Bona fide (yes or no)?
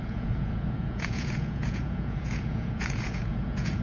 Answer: no